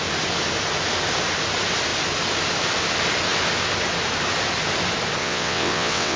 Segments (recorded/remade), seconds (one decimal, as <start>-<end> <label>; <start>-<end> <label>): 0.0-5.2 recorded; 5.2-6.2 remade

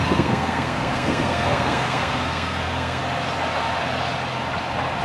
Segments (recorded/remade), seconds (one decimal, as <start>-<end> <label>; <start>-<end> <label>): 0.0-3.0 remade; 3.0-5.0 recorded

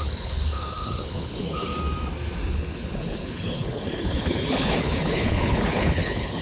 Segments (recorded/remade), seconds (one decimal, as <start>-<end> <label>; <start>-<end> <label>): 0.0-1.7 remade; 1.7-2.5 recorded; 2.5-6.4 remade

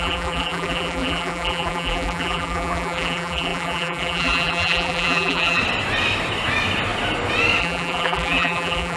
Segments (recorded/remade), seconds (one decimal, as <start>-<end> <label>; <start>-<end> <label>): 0.0-5.6 remade; 5.6-7.6 recorded; 7.6-9.0 remade

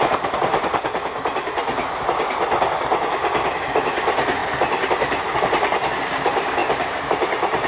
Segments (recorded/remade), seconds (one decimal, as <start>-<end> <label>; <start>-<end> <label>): 0.0-7.7 recorded

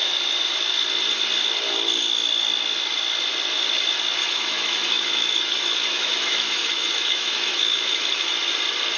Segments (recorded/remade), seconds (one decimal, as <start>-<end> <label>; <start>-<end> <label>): 0.0-4.2 recorded; 4.2-8.3 remade; 8.3-9.0 recorded